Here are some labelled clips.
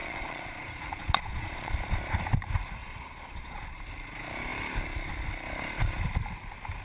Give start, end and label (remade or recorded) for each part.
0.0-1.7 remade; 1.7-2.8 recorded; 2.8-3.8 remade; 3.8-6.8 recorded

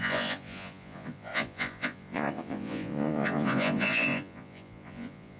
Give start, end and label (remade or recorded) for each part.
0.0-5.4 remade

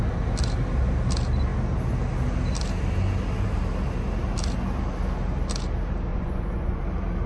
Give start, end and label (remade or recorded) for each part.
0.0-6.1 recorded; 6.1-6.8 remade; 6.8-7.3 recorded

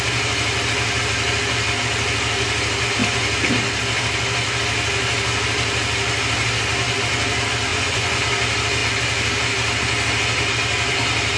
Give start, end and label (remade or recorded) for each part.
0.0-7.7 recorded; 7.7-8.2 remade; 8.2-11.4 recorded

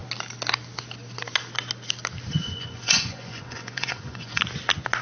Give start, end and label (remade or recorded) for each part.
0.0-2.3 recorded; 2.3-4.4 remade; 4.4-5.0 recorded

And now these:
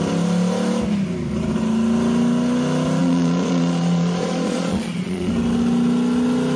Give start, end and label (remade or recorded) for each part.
0.0-3.0 recorded; 3.0-5.3 remade; 5.3-6.6 recorded